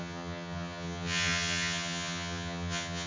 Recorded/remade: remade